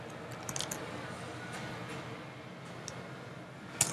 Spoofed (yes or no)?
no